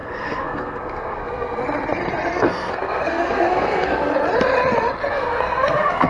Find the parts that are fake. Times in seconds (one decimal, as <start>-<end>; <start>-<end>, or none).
0.0-1.6; 2.3-4.1; 5.1-6.1